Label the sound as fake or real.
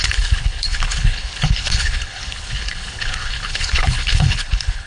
fake